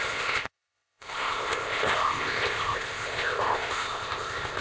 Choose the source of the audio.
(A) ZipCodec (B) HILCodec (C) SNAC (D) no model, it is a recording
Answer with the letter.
A